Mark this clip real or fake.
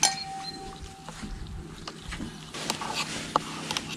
real